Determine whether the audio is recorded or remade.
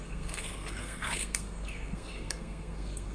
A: remade